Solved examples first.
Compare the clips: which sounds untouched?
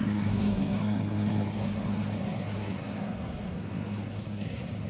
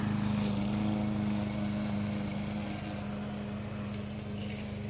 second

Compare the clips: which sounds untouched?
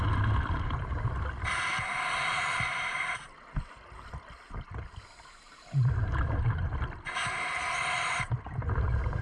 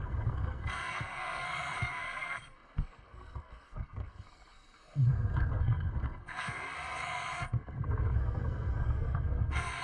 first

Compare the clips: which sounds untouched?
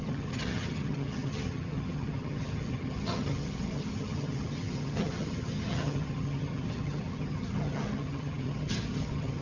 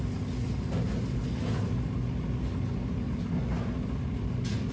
second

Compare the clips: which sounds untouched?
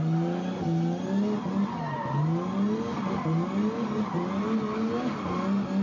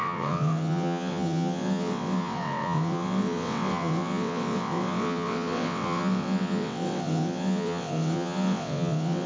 first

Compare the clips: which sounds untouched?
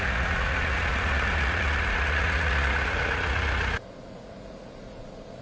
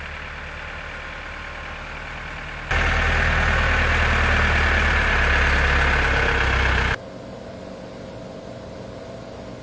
second